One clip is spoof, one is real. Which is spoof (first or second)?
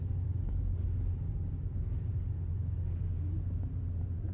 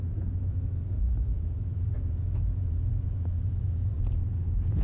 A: second